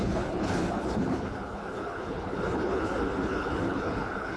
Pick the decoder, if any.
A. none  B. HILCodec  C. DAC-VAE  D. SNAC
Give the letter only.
B